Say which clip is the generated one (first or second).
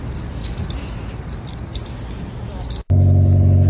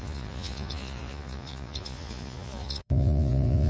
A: second